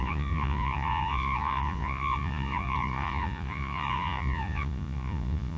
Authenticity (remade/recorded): remade